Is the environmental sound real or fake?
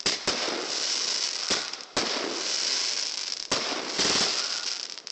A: real